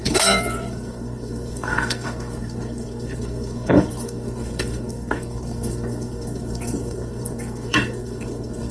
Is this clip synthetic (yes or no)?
yes